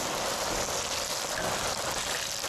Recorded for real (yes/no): yes